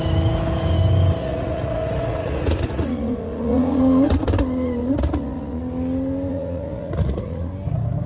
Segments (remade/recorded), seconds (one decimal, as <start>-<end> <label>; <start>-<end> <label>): 0.0-1.2 recorded; 1.2-4.3 remade; 4.3-4.8 recorded; 4.8-5.6 remade; 5.6-6.3 recorded; 6.3-7.5 remade; 7.5-8.1 recorded